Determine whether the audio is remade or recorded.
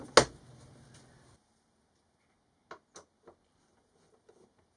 recorded